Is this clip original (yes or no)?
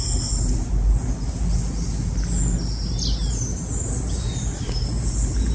yes